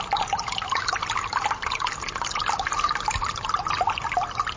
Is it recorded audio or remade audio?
recorded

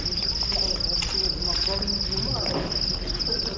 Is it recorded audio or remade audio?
recorded